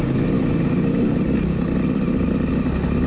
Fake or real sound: real